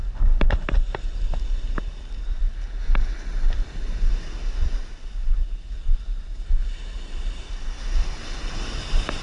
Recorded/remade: remade